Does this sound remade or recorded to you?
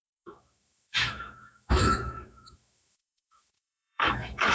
remade